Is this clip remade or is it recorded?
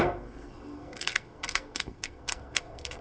remade